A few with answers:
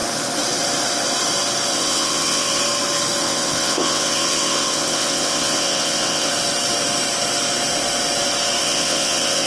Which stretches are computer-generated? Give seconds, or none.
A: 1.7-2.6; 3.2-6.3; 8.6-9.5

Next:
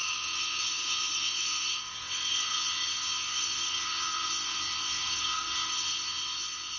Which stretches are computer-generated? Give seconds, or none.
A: 0.0-6.8

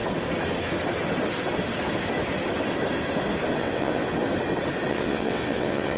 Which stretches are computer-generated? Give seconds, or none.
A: 3.6-4.1; 4.9-6.0

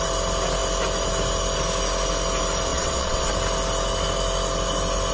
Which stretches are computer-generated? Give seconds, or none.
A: 2.7-3.3

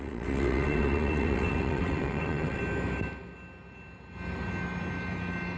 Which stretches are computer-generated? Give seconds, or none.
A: 0.0-2.6